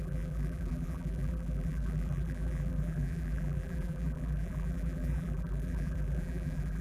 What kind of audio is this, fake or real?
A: fake